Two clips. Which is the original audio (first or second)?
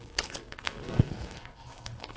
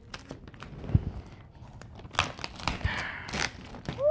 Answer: second